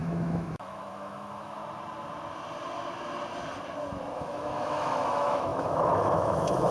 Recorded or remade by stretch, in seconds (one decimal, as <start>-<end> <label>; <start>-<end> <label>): 0.0-1.6 remade; 1.6-4.2 recorded; 4.2-6.7 remade